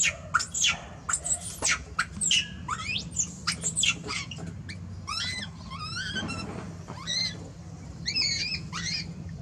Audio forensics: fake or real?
real